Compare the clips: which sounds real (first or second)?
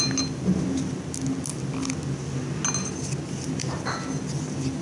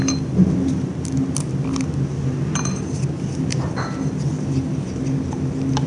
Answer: first